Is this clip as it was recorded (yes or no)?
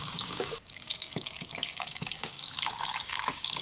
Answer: no